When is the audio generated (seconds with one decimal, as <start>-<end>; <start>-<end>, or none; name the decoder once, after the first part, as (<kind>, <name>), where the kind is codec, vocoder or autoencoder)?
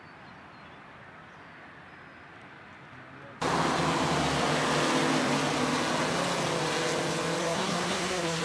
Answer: 7.4-8.4 (codec, SNAC)